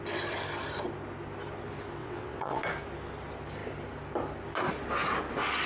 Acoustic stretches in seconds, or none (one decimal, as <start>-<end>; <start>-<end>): 0.0-2.0; 2.6-5.7